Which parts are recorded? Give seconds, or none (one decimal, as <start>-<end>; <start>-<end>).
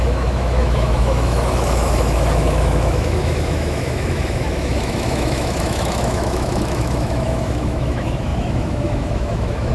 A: none